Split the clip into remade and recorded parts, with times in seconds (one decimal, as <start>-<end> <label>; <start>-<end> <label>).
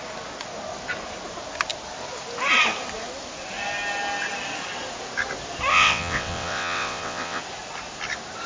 0.0-5.7 recorded; 5.7-7.4 remade; 7.4-8.5 recorded